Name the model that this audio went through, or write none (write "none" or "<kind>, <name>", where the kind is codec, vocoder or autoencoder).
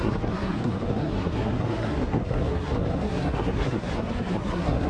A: codec, SNAC